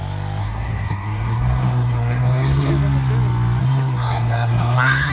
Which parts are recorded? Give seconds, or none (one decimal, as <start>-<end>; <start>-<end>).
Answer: 0.0-0.4; 2.7-3.6